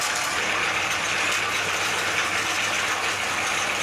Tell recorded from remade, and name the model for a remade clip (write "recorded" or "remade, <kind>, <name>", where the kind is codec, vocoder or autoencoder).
recorded